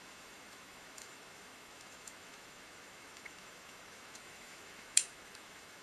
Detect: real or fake fake